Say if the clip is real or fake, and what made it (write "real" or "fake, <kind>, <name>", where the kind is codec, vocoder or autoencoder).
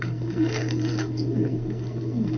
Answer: fake, codec, SNAC